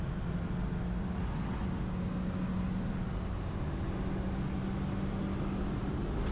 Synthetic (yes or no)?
no